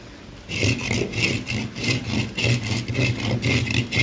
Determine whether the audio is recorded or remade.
recorded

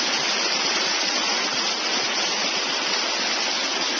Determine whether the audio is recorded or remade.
recorded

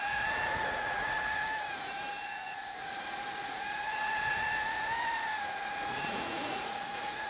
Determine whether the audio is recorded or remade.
remade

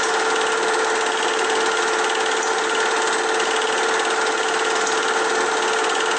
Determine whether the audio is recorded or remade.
recorded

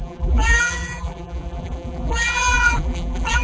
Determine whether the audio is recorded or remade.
remade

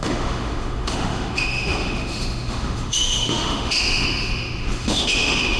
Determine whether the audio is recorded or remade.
remade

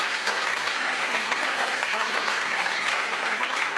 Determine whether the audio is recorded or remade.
remade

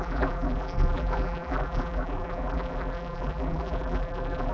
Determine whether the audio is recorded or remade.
remade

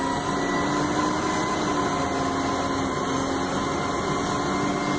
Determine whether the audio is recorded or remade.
recorded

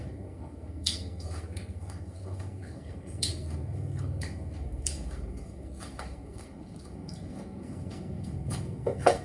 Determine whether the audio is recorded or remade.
remade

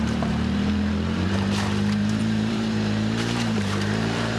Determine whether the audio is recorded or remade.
remade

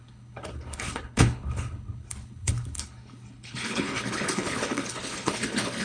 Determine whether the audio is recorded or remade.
remade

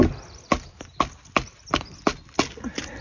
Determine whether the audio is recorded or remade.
recorded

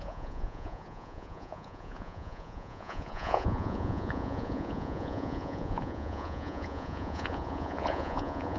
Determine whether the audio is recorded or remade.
remade